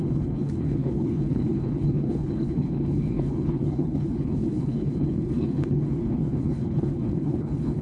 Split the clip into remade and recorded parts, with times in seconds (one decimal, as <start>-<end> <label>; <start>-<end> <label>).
0.0-7.8 remade